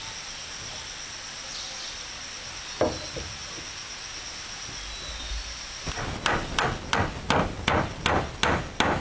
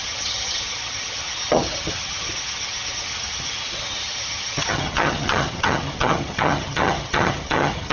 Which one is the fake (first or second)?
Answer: second